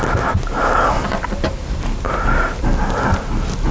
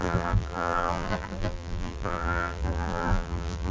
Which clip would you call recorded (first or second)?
first